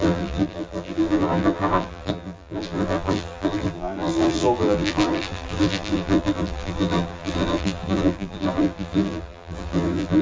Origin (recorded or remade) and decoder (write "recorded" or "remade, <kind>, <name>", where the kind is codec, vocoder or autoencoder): remade, vocoder, BigVGAN v2